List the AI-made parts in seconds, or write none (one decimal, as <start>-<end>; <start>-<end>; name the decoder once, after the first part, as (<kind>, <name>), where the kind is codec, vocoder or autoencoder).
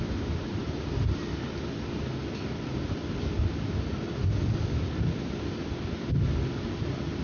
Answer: none